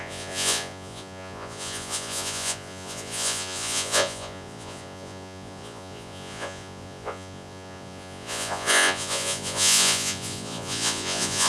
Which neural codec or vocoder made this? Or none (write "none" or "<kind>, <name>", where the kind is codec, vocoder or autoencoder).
vocoder, Vocos